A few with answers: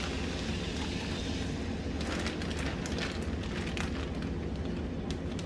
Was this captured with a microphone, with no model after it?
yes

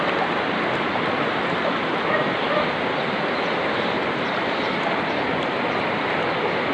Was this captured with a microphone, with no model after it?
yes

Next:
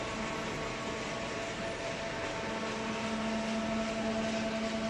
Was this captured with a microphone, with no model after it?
yes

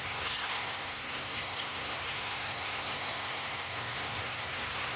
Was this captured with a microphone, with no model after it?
no